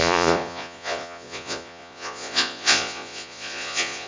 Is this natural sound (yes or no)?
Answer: no